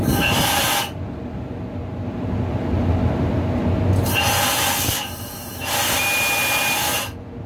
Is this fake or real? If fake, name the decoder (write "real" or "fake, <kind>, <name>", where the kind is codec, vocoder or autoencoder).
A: real